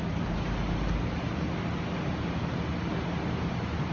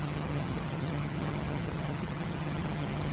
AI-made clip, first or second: second